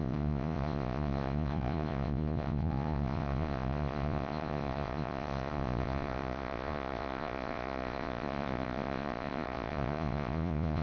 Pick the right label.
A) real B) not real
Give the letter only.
B